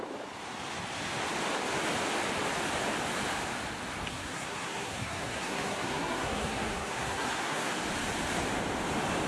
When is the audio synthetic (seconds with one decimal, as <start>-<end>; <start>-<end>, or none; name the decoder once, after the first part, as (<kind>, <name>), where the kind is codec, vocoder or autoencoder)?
4.1-7.7 (codec, SNAC)